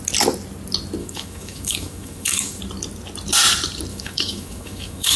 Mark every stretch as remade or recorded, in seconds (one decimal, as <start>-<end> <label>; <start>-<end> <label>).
0.0-1.0 recorded; 1.0-2.6 remade; 2.6-3.9 recorded; 3.9-5.2 remade